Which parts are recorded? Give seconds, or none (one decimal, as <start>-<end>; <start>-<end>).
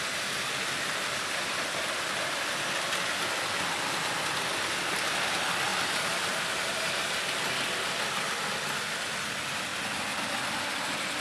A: 0.0-5.7; 6.9-11.2